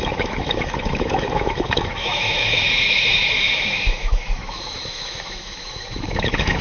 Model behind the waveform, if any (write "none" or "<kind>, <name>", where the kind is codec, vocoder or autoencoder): autoencoder, DAC-VAE